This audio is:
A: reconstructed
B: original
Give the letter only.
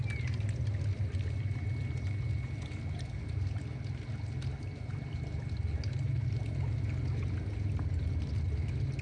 B